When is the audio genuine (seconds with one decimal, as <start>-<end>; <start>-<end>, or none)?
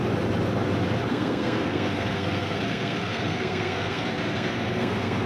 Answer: 0.0-1.1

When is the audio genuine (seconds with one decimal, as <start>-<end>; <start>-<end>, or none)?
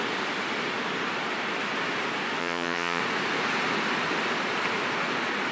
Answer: 0.0-2.4; 3.0-5.5